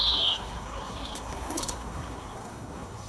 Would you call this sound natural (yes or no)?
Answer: no